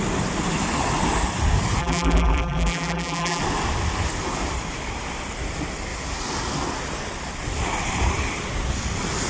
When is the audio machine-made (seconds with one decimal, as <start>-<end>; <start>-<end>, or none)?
1.8-3.4